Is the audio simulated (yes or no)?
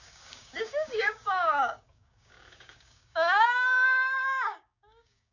yes